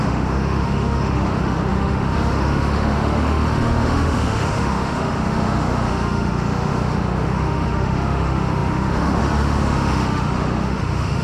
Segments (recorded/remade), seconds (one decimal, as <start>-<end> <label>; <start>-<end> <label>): 0.0-11.2 remade